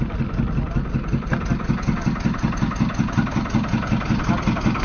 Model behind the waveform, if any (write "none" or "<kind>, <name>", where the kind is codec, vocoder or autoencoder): none